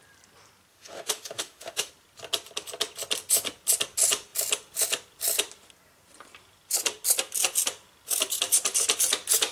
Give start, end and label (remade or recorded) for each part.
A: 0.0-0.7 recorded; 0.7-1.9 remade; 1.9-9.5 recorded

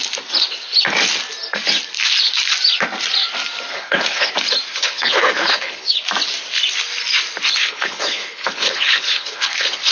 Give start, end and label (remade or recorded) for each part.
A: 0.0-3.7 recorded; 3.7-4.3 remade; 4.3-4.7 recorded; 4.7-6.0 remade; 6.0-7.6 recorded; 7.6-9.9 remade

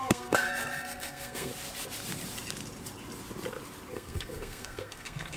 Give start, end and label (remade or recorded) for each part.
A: 0.0-1.5 remade; 1.5-3.9 recorded; 3.9-5.4 remade

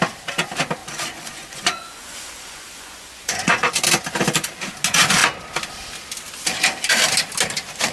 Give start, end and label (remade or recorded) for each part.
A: 0.0-0.8 recorded; 0.8-3.7 remade; 3.7-7.9 recorded